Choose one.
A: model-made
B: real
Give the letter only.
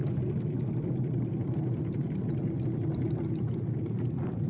B